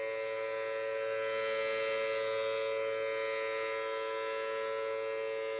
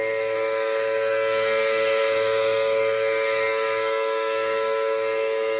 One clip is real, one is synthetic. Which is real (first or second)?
first